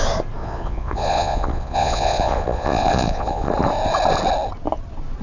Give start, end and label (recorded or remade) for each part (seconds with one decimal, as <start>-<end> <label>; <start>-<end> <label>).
0.0-0.4 recorded; 0.4-3.5 remade; 3.5-5.2 recorded